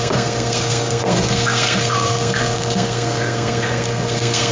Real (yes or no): no